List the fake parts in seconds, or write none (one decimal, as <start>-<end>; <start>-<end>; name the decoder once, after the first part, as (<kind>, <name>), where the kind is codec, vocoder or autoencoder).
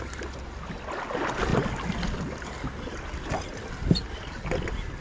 none